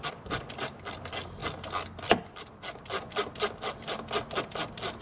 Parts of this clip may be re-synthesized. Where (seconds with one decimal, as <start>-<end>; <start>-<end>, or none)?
none